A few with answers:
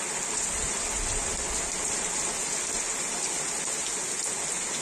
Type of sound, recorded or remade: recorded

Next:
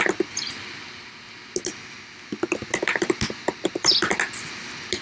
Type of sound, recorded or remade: recorded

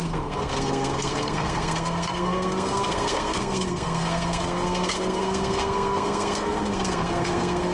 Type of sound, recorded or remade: remade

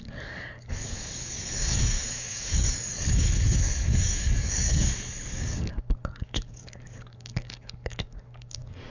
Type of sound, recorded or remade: remade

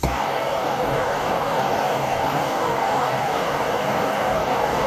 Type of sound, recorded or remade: remade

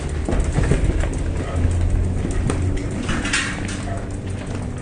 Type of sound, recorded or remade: recorded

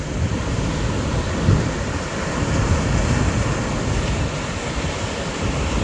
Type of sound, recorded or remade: remade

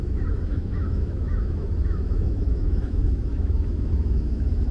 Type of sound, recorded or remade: remade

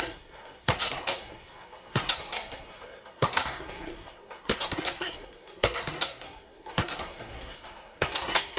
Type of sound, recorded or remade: remade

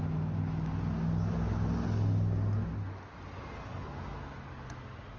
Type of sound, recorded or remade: recorded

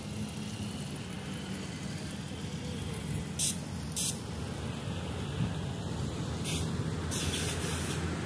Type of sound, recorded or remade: recorded